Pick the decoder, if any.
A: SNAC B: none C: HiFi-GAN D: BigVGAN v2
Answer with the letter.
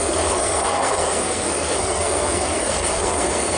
A